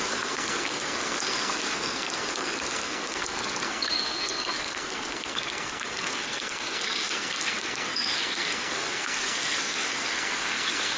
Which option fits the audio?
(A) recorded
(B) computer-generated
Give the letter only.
B